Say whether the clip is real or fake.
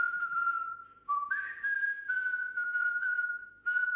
fake